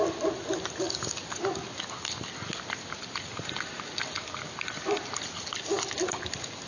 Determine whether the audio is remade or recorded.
recorded